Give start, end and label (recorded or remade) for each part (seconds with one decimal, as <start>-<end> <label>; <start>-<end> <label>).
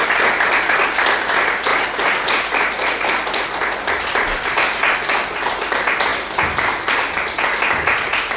0.0-8.4 recorded